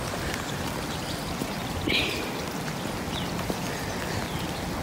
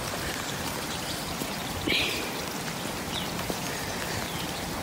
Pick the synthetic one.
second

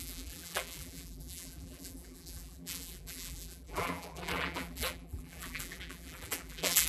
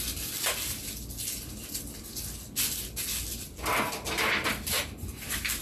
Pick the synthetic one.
first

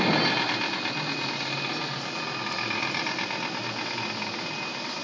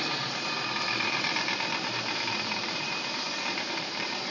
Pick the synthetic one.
second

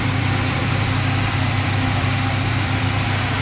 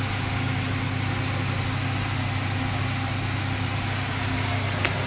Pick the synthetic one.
first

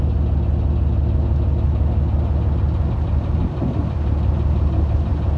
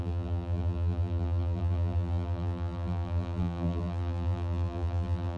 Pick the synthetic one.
second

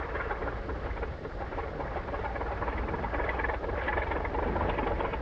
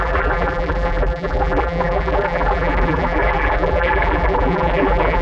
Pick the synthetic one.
second